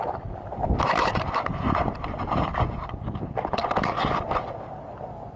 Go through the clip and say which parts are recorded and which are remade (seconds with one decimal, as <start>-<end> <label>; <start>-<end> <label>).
0.0-0.6 recorded; 0.6-5.4 remade